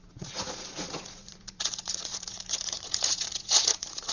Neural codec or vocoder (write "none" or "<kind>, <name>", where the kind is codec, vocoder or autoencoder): vocoder, Vocos